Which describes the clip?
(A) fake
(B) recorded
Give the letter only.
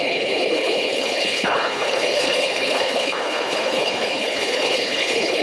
A